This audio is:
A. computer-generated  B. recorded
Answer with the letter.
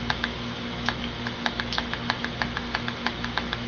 A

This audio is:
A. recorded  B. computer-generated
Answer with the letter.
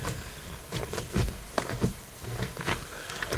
B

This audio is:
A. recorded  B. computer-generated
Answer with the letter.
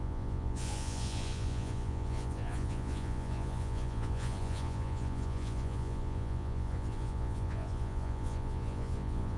B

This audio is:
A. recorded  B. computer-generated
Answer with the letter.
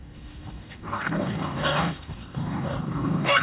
B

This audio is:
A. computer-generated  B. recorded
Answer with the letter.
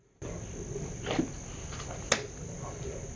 B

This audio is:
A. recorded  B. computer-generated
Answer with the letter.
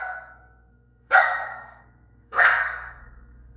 B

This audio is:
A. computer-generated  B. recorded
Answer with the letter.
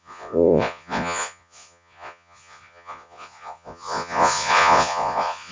A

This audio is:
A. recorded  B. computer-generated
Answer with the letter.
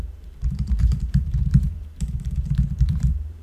B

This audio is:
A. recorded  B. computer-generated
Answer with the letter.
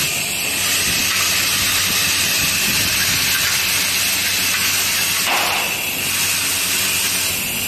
A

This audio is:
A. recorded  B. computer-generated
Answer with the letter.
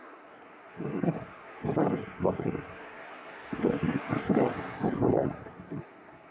B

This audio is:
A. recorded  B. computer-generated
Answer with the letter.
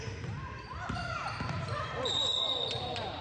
B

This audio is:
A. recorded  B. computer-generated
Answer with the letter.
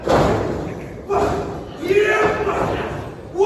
A